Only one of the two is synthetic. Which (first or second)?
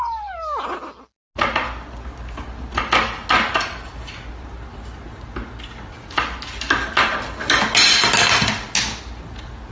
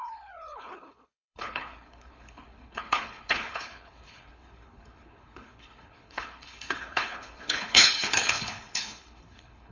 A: second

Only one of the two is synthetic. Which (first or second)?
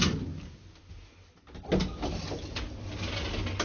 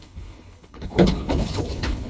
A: second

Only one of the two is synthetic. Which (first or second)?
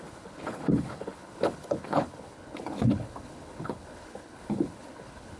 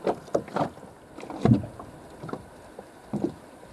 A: first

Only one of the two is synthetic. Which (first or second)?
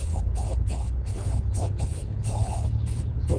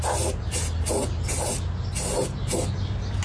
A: first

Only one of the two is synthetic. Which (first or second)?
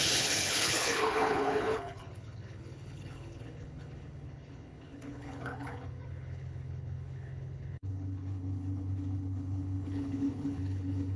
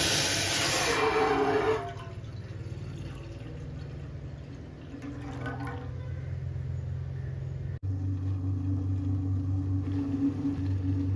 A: first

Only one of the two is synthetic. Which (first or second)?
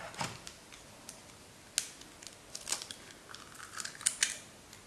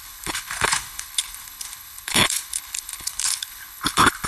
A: second